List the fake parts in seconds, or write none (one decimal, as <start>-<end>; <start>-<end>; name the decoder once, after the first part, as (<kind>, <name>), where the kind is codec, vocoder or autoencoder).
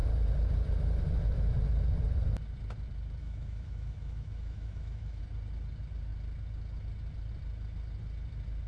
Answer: 3.2-5.2 (autoencoder, DAC-VAE)